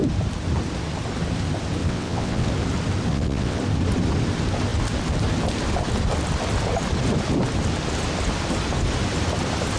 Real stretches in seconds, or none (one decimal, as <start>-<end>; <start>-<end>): 0.0-1.8; 2.5-3.1; 3.6-9.8